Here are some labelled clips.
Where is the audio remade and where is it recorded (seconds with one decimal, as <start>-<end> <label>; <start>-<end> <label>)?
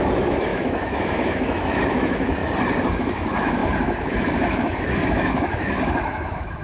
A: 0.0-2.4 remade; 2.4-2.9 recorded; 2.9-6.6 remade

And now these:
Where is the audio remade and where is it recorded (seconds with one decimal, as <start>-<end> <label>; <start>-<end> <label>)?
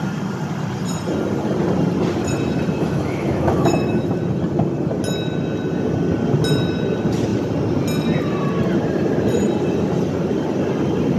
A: 0.0-2.8 recorded; 2.8-4.1 remade; 4.1-11.2 recorded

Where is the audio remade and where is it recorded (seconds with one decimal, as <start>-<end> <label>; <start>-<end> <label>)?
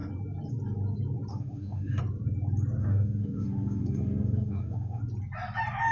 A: 0.0-1.3 recorded; 1.3-2.0 remade; 2.0-2.8 recorded; 2.8-5.0 remade; 5.0-5.9 recorded